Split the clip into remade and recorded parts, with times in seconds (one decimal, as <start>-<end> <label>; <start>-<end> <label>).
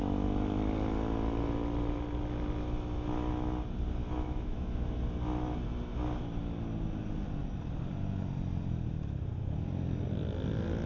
0.0-4.0 recorded; 4.0-5.0 remade; 5.0-10.9 recorded